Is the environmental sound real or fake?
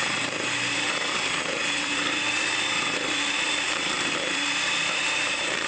fake